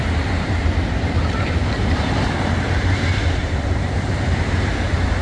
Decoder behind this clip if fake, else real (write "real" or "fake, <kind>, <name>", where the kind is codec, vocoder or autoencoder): fake, vocoder, BigVGAN v2